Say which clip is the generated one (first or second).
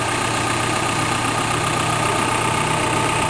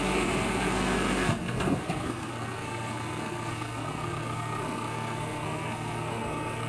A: second